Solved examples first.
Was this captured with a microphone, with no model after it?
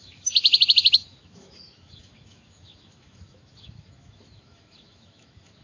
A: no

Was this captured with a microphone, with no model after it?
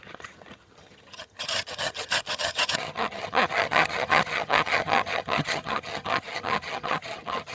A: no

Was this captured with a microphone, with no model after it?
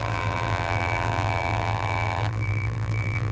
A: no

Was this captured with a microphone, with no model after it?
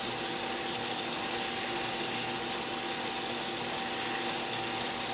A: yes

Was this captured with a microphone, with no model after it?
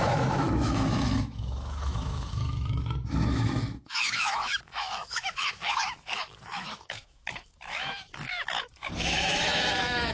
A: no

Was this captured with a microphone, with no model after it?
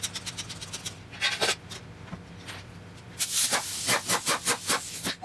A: yes